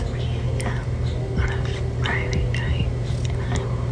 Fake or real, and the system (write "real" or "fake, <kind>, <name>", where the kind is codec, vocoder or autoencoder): real